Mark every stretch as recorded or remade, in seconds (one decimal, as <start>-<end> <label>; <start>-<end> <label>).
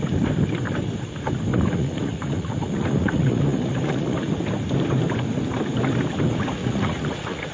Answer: 0.0-1.5 recorded; 1.5-4.3 remade; 4.3-6.6 recorded; 6.6-7.5 remade